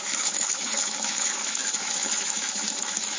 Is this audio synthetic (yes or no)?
yes